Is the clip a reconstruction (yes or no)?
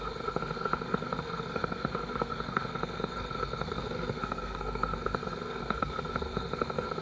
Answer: yes